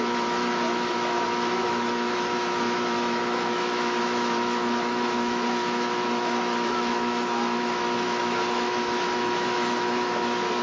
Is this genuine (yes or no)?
no